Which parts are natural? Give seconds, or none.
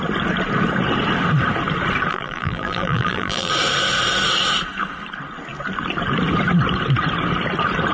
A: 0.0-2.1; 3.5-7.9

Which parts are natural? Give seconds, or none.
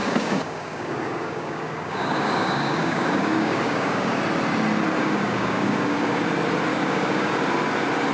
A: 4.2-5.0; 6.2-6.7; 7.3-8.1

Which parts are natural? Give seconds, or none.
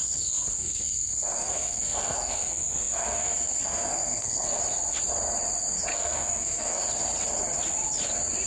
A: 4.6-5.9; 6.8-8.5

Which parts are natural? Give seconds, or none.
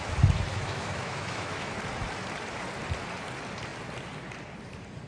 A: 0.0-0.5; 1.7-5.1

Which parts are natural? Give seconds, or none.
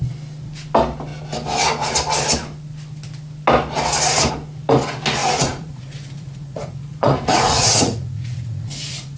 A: 0.0-5.2